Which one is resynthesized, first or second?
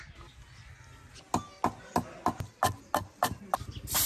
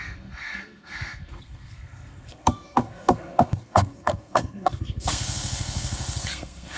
second